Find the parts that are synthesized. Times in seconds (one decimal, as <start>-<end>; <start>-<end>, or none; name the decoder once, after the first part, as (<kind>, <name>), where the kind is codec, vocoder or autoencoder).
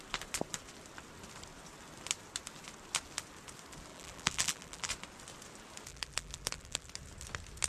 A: 3.9-4.9 (vocoder, BigVGAN v2); 5.9-6.9